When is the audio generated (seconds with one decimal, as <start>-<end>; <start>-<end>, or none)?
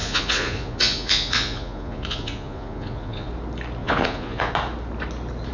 0.0-3.3; 3.8-4.5